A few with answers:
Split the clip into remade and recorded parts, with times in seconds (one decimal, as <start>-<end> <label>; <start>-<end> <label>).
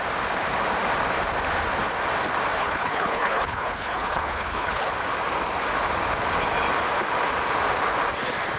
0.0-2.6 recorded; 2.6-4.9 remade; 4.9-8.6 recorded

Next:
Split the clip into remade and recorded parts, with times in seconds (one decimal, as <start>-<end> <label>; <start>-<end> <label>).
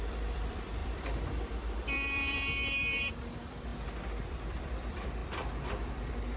0.0-3.7 remade; 3.7-4.3 recorded; 4.3-6.4 remade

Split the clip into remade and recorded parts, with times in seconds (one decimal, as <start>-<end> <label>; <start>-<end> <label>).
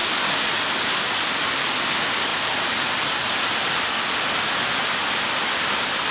0.0-6.1 recorded